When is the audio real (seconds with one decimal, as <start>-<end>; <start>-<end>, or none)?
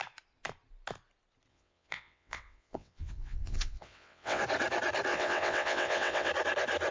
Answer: 0.0-1.5; 4.4-5.1; 6.3-6.9